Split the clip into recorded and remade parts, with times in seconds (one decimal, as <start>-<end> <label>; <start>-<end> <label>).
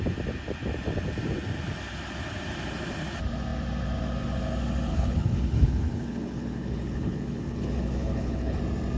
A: 0.0-4.9 recorded; 4.9-8.6 remade; 8.6-9.0 recorded